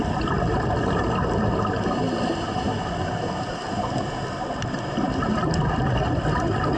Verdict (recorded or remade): recorded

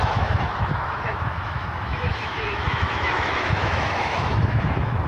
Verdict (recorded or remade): remade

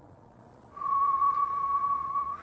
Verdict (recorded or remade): remade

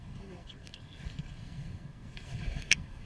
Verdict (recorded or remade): remade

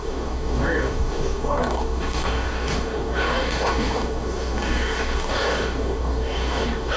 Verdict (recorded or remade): remade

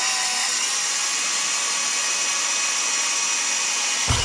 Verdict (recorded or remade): recorded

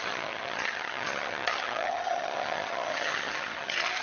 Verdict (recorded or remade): remade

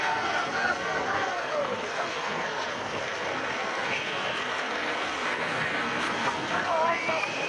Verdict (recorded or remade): remade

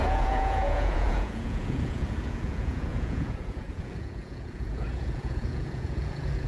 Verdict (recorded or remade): remade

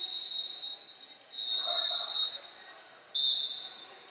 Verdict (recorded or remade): recorded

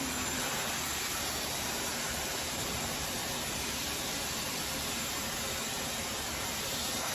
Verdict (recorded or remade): remade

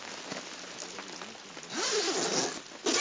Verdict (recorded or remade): recorded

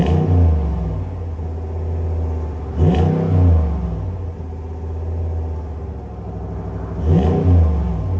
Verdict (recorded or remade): recorded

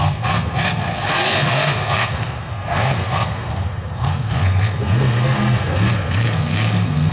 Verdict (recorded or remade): remade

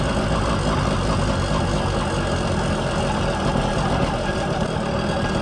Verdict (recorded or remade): recorded